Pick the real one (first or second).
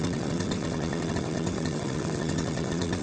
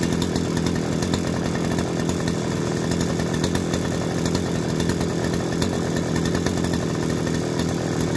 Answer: second